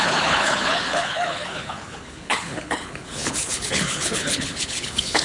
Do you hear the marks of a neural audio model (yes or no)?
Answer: yes